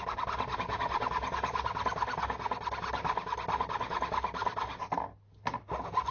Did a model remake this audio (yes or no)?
no